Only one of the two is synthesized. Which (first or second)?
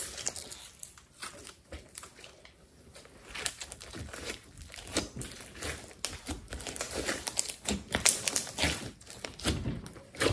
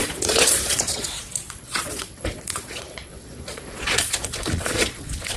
second